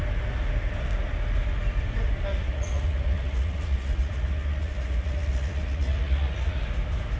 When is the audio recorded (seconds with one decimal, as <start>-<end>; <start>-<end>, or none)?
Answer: 0.0-2.3; 6.6-7.2